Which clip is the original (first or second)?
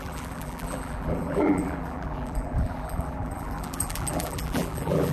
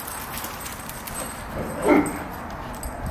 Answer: second